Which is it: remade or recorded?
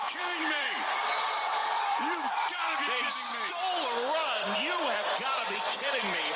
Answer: remade